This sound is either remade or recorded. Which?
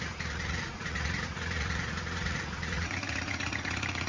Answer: remade